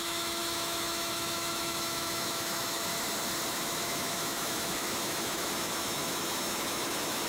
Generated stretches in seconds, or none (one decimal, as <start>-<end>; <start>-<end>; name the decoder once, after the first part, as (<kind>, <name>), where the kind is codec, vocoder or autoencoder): 0.0-2.9 (autoencoder, DAC-VAE); 3.5-7.3